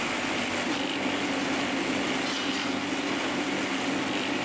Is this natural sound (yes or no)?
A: yes